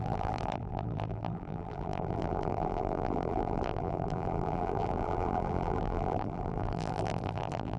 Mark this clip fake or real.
fake